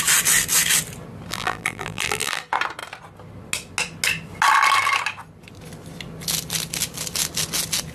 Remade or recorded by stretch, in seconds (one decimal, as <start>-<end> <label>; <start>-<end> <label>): 0.0-1.3 recorded; 1.3-2.4 remade; 2.4-7.9 recorded